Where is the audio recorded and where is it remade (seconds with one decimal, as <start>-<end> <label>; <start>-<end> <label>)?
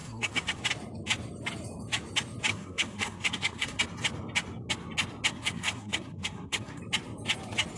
0.0-0.6 remade; 0.6-2.5 recorded; 2.5-3.8 remade; 3.8-5.3 recorded; 5.3-6.8 remade; 6.8-7.8 recorded